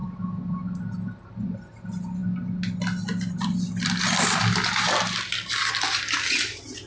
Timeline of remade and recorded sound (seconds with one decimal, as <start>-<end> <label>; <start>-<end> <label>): 0.0-6.9 recorded